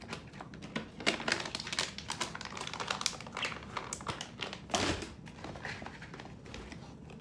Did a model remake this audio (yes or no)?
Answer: no